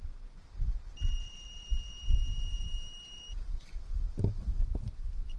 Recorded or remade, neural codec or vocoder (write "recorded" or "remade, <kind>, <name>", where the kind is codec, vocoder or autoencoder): remade, vocoder, BigVGAN v2